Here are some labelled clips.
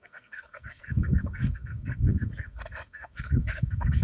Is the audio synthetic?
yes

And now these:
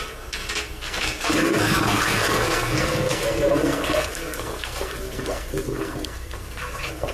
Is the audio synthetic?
yes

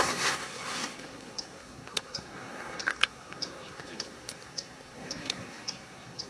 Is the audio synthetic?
yes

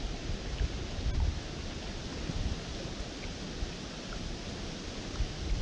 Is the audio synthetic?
no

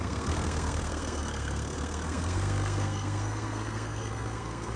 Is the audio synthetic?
yes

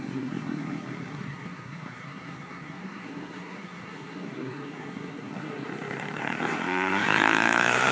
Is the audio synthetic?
yes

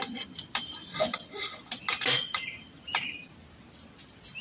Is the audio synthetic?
no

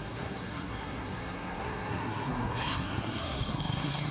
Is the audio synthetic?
yes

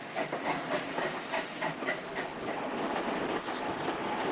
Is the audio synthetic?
no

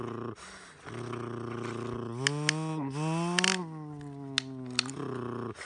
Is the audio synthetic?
no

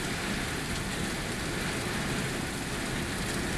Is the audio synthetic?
no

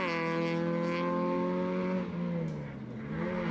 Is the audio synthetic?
no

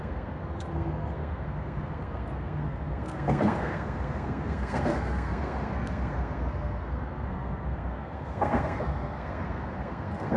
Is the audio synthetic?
yes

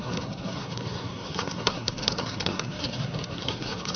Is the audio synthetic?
yes